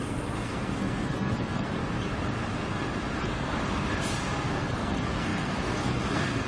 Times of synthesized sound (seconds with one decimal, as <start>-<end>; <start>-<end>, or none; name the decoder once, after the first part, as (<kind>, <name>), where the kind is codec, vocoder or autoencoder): 0.0-1.8 (codec, SNAC); 3.2-3.6; 4.5-6.5